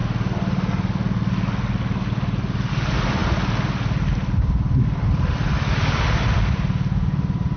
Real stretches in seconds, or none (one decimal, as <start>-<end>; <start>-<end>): 0.0-2.7; 3.2-7.6